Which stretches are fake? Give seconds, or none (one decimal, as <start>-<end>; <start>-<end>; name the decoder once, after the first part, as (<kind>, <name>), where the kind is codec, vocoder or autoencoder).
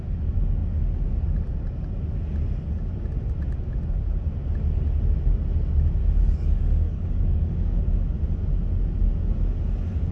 6.0-7.8 (codec, DAC)